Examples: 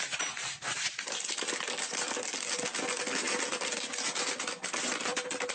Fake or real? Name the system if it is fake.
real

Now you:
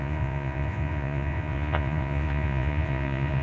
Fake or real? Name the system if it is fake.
fake, vocoder, Vocos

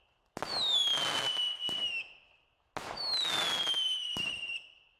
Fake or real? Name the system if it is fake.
real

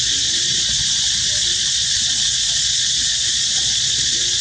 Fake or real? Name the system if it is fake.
fake, vocoder, Vocos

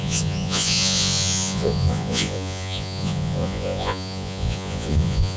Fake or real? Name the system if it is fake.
fake, vocoder, Vocos